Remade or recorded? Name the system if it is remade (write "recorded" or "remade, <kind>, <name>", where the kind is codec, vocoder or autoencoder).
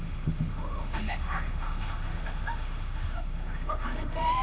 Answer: remade, autoencoder, DAC-VAE